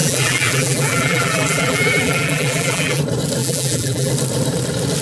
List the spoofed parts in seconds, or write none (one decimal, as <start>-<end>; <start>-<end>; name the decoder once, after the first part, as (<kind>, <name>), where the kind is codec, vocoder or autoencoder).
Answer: 0.0-3.0 (vocoder, BigVGAN v2); 3.4-4.1